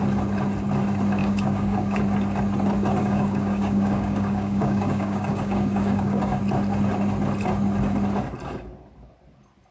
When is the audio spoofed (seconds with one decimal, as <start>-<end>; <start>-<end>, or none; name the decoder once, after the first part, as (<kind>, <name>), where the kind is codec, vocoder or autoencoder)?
1.2-2.0 (codec, DAC); 3.0-6.4